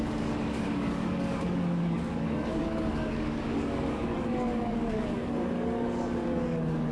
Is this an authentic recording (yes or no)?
no